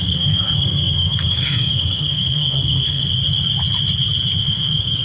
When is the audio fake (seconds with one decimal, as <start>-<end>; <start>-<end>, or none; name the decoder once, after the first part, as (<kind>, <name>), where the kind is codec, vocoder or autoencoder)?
0.0-3.0 (codec, SNAC); 4.4-5.0